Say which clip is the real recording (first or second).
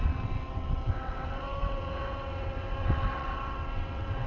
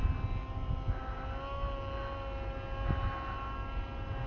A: second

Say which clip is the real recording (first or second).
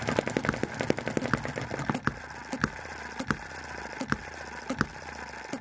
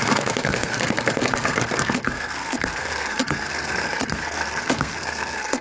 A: first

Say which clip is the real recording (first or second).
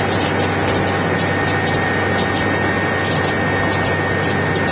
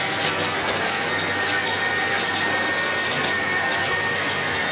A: first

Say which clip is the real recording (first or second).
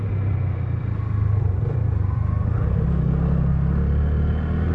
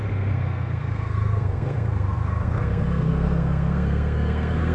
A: first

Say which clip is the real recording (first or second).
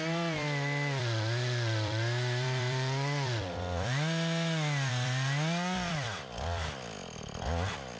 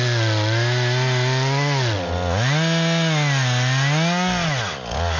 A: second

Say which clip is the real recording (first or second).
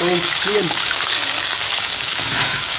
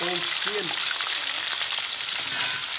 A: second